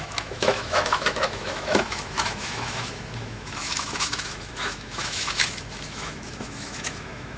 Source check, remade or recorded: remade